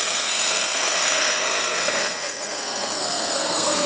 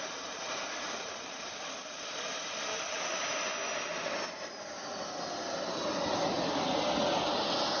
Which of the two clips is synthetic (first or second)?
first